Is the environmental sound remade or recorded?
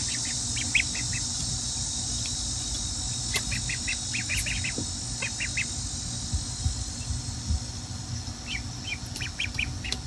recorded